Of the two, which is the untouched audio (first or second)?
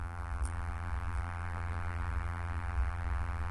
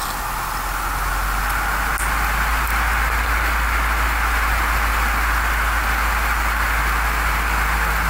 second